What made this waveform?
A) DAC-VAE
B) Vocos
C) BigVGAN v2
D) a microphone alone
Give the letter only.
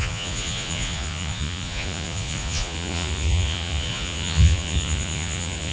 B